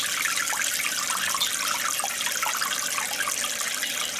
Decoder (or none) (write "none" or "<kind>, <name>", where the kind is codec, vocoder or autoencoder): none